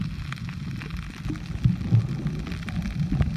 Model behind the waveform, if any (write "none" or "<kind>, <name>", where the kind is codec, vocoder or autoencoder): none